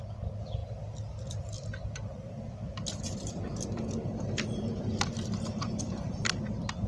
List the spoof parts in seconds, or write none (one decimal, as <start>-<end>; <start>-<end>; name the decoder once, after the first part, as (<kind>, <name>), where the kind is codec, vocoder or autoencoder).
2.7-6.9 (vocoder, BigVGAN v2)